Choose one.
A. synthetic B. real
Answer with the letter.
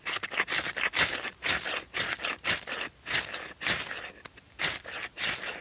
B